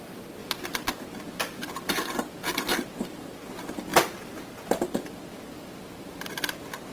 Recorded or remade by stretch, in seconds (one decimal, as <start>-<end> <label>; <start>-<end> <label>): 0.0-6.9 recorded